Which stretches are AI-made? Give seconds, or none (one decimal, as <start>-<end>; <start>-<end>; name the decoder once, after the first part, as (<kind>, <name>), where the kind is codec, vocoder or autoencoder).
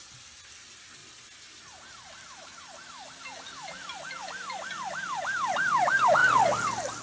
none